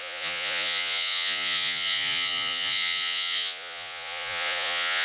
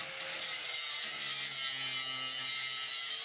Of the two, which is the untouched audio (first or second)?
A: second